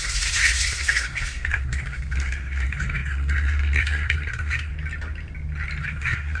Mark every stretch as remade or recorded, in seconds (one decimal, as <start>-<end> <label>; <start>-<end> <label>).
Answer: 0.0-4.7 remade; 4.7-5.8 recorded; 5.8-6.4 remade